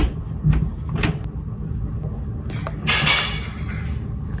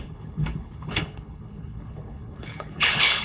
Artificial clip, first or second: second